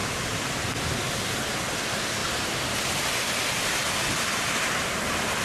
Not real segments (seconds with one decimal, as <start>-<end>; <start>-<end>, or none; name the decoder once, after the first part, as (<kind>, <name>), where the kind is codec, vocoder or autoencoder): 0.0-0.8 (vocoder, BigVGAN v2); 2.2-2.8

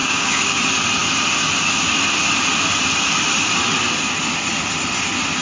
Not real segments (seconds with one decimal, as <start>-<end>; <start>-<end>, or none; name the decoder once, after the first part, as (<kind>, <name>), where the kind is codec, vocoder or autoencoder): 0.0-0.6 (codec, DAC)

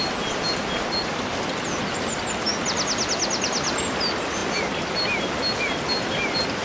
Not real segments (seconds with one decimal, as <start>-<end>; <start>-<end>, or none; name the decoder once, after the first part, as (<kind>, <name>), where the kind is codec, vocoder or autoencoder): none

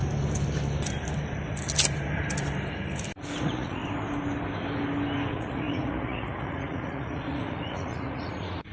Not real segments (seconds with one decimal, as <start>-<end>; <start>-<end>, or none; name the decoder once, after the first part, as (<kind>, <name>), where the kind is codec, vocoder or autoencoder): 3.4-3.8 (vocoder, Vocos); 5.3-8.7

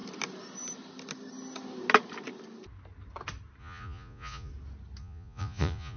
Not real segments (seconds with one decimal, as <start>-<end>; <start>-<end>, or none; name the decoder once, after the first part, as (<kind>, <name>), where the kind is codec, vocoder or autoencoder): 3.6-4.5 (vocoder, Vocos); 5.0-6.0

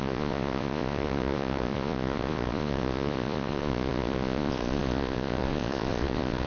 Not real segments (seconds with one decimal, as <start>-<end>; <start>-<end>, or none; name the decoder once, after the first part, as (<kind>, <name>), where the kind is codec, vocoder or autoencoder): 0.0-6.5 (vocoder, Vocos)

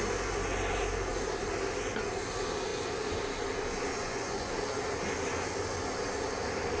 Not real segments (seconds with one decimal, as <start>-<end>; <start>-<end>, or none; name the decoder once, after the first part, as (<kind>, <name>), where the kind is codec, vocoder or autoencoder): 3.9-4.5 (vocoder, Vocos)

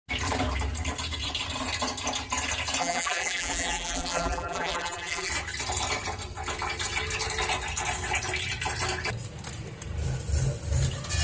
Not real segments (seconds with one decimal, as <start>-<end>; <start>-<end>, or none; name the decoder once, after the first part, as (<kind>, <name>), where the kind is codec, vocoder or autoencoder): 2.8-5.3 (vocoder, BigVGAN v2)